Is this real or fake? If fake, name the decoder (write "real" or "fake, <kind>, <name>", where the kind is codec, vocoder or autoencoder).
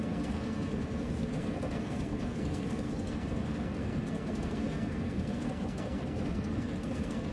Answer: fake, codec, SNAC